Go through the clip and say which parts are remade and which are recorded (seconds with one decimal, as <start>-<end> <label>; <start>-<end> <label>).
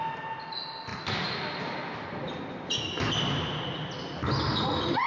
0.0-5.1 recorded